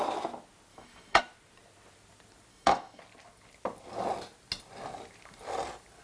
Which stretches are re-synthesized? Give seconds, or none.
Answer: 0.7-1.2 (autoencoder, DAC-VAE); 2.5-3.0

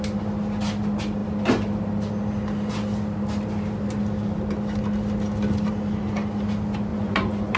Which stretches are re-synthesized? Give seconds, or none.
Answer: 6.9-7.6 (vocoder, Vocos)

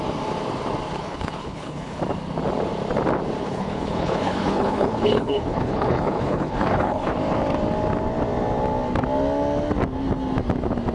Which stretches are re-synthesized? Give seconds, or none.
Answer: 1.0-2.0 (codec, HILCodec); 3.4-7.1

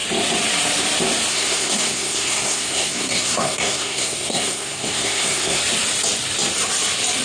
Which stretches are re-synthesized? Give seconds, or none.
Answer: 1.3-5.6 (codec, SNAC)

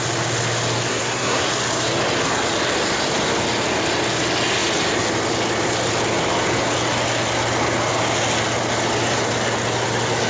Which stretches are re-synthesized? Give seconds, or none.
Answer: 0.9-1.5 (codec, SNAC)

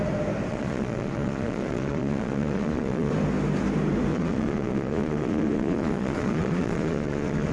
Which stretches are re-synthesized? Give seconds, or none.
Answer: 0.5-3.1 (vocoder, Vocos); 4.1-7.5